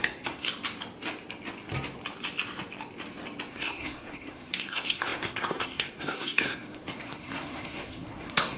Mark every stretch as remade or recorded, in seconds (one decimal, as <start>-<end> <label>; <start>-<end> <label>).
0.0-0.5 remade; 0.5-3.5 recorded; 3.5-8.6 remade